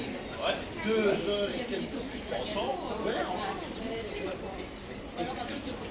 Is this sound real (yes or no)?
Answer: no